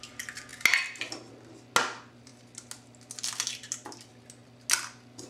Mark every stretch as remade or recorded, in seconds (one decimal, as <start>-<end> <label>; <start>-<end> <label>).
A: 0.0-5.3 recorded